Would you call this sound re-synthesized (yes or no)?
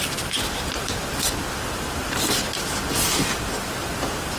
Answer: yes